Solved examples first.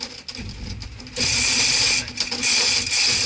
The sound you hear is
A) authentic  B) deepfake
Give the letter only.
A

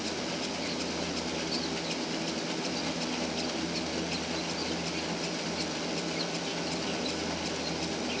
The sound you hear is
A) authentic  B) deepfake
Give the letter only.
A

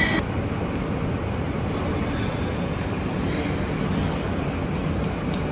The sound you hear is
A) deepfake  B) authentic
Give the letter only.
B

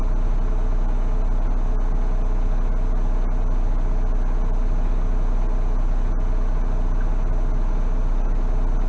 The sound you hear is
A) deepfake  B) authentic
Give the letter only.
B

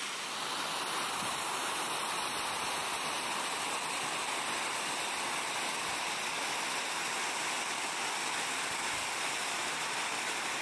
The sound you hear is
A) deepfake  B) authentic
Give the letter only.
B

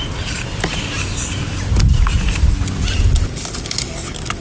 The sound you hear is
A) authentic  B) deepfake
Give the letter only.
A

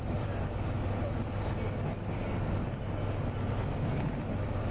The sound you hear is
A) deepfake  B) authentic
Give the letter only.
B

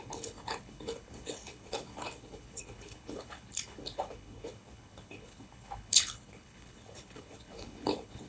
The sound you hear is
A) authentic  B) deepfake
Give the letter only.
B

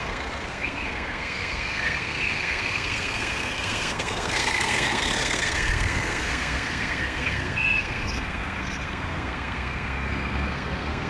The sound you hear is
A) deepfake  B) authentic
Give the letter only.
A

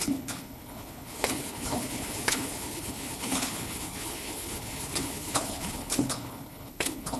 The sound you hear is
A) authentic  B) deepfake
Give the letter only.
B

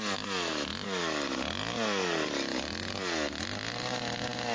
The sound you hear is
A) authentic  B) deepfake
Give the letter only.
A